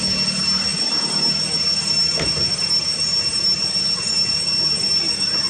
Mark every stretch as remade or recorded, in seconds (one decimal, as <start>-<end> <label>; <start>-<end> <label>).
0.0-5.5 recorded